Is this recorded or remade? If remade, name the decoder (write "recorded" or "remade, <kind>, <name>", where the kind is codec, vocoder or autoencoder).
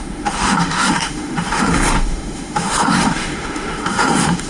remade, autoencoder, DAC-VAE